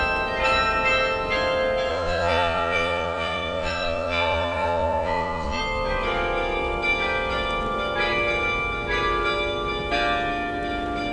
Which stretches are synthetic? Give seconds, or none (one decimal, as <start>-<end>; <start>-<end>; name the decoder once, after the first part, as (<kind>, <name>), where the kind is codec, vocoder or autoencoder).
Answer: 1.9-5.6 (vocoder, Vocos)